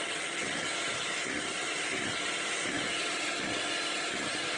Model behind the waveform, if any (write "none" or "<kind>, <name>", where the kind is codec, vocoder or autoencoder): none